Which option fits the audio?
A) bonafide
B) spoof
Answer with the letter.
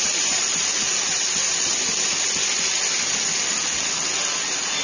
A